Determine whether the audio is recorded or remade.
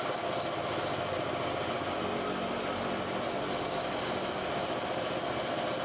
recorded